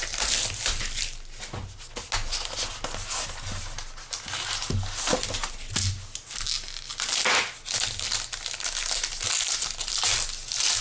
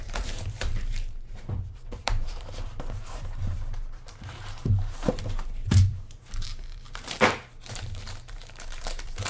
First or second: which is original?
first